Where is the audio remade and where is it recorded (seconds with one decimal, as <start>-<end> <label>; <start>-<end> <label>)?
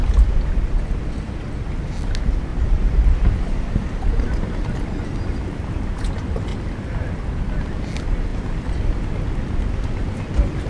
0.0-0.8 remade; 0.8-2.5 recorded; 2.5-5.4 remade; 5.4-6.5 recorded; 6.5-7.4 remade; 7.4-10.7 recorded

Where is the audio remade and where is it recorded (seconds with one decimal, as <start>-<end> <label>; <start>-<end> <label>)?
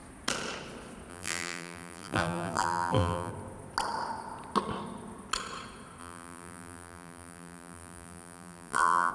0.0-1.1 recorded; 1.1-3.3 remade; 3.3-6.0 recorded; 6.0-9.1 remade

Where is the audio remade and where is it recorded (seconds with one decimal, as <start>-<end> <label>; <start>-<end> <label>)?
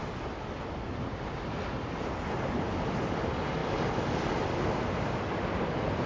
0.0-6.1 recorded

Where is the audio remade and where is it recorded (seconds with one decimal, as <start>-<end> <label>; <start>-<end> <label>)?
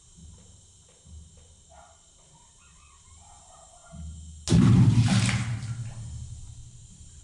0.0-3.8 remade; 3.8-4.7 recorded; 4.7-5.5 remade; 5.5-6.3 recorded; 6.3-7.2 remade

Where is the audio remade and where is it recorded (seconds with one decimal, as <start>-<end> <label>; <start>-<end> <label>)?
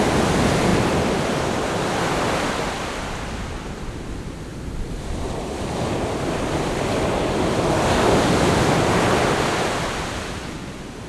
0.0-11.1 recorded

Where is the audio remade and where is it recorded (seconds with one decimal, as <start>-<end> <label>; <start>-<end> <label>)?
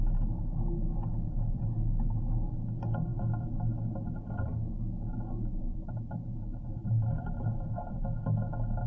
0.0-5.1 recorded; 5.1-7.9 remade; 7.9-8.9 recorded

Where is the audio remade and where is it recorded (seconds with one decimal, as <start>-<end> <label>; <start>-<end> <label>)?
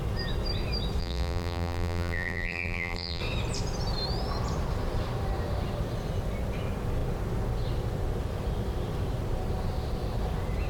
0.0-1.0 recorded; 1.0-3.2 remade; 3.2-10.7 recorded